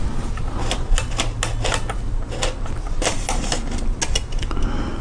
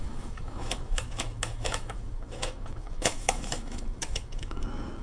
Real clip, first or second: first